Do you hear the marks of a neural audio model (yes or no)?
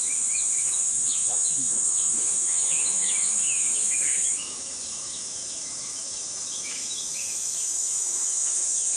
yes